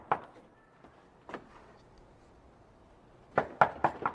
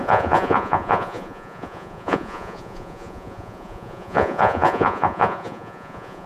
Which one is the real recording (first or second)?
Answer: first